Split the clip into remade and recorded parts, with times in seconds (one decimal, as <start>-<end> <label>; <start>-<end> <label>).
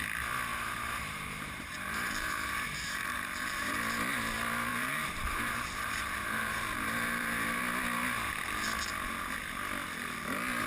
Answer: 0.0-0.5 recorded; 0.5-3.8 remade; 3.8-4.7 recorded; 4.7-7.6 remade; 7.6-10.7 recorded